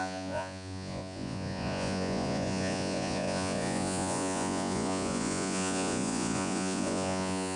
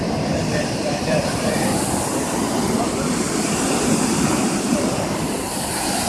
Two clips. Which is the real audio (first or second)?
second